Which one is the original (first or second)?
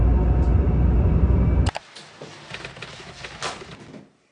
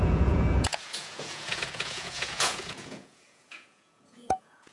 first